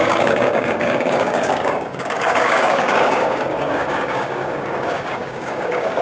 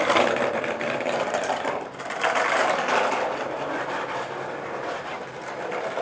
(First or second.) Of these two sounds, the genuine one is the second